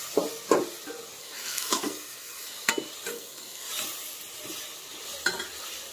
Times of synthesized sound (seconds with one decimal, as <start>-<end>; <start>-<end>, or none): 1.2-2.7; 3.1-3.7

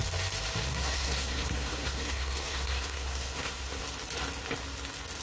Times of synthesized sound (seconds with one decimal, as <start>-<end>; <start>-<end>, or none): 0.7-3.8

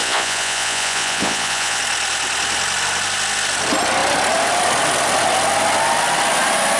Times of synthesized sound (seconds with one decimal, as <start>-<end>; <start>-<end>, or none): 0.0-1.8

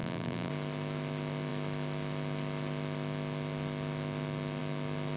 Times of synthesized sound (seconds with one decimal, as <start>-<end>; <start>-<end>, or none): 0.0-0.5

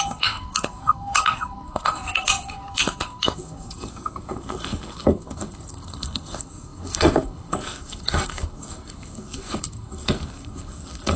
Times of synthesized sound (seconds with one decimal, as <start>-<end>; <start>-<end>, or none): 0.0-11.2